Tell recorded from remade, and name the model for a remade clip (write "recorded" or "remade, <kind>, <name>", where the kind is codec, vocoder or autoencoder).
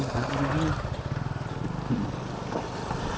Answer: recorded